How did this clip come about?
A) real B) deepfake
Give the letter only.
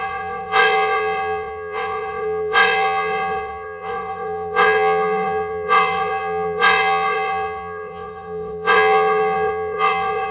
B